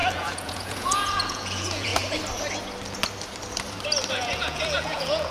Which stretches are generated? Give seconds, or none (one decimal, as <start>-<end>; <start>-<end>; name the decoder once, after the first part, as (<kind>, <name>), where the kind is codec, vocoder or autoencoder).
0.0-1.9 (vocoder, Vocos); 4.1-5.3